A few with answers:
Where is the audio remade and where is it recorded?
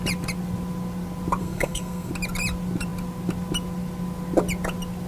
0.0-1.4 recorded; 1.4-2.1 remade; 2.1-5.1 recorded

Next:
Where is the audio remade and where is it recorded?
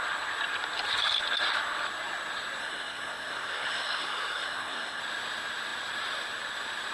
0.0-2.6 recorded; 2.6-5.0 remade; 5.0-6.9 recorded